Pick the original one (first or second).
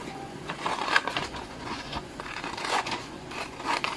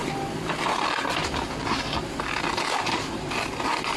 second